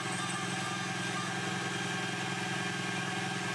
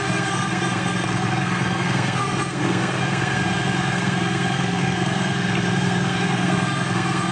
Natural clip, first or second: first